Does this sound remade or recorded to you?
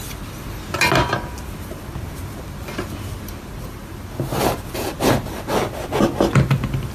recorded